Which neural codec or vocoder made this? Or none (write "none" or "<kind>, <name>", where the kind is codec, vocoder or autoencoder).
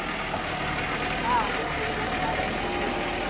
none